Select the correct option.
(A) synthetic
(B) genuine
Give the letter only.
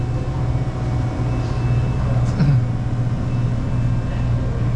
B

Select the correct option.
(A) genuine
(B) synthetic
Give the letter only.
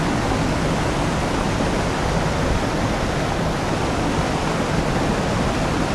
A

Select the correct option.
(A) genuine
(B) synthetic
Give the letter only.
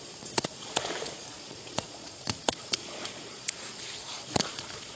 B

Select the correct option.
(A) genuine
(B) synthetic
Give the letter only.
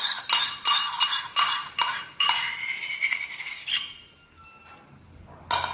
A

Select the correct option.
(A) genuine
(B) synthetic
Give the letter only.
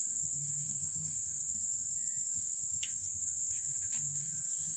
B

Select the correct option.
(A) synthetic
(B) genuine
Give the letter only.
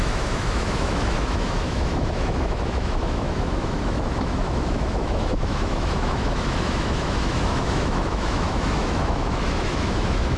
A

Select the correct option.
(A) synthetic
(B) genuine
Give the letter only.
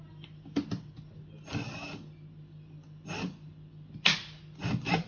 B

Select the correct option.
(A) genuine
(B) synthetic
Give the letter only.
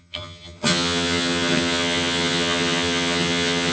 B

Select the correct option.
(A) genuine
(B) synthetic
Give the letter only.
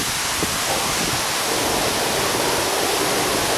A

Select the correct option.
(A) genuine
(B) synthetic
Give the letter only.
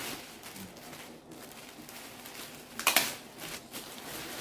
A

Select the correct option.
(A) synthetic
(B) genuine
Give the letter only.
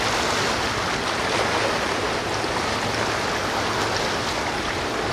B